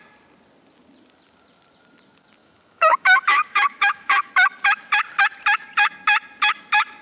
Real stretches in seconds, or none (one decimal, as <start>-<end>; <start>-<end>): 0.0-2.4; 4.3-7.0